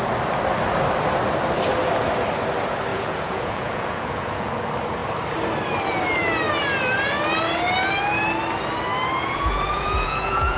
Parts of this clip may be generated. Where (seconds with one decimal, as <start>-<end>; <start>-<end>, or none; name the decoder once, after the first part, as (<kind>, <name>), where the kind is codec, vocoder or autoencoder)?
2.9-4.5 (vocoder, Vocos); 9.2-10.6